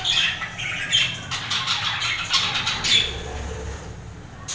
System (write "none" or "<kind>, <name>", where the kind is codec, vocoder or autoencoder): none